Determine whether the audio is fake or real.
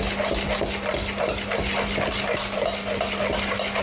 real